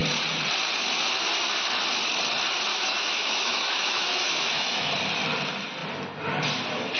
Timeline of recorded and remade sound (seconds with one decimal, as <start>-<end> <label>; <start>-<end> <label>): 0.0-2.7 recorded; 2.7-4.9 remade; 4.9-7.0 recorded